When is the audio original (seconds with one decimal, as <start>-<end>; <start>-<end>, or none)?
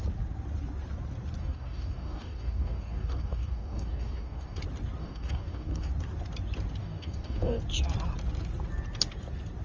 0.0-1.4; 4.6-5.0; 5.9-6.8; 7.6-9.6